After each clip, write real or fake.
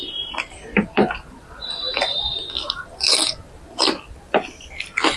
fake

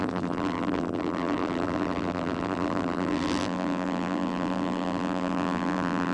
fake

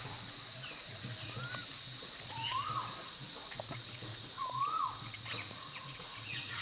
fake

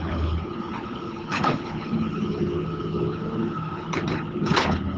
fake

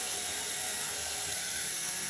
fake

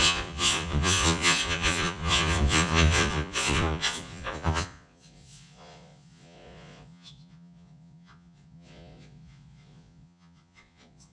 fake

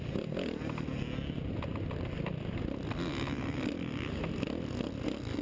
real